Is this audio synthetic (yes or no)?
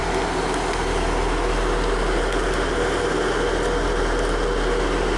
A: no